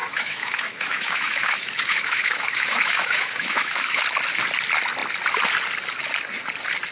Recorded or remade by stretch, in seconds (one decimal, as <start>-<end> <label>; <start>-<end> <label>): 0.0-4.0 remade; 4.0-6.9 recorded